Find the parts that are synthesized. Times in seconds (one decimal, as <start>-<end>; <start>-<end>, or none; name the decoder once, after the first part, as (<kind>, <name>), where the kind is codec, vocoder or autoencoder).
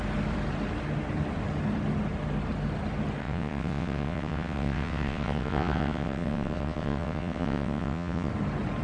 3.2-8.3 (vocoder, WaveNeXt)